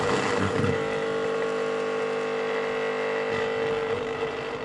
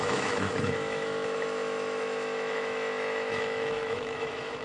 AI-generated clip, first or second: second